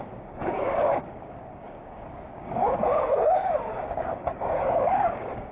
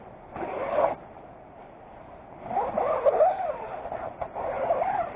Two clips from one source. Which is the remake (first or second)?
first